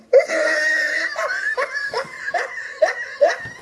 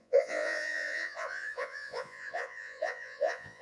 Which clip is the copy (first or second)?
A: second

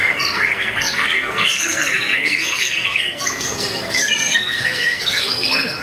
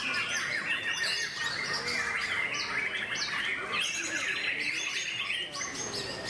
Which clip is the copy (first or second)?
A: first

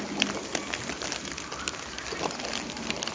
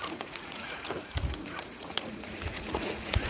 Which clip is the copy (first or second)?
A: second